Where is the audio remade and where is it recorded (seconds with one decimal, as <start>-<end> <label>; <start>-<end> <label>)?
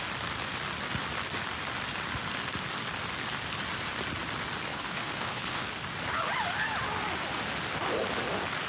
0.0-4.7 recorded; 4.7-5.6 remade; 5.6-8.7 recorded